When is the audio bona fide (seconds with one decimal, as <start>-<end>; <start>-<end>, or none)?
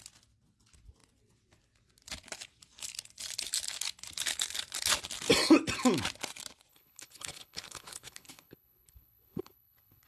0.0-6.7